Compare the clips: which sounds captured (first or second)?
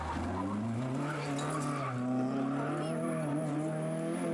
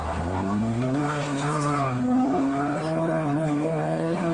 first